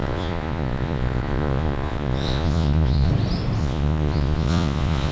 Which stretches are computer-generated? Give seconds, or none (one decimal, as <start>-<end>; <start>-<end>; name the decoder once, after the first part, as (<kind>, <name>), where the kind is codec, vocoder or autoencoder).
0.0-3.1 (vocoder, Vocos); 3.6-5.1